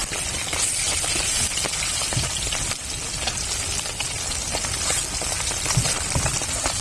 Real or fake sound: real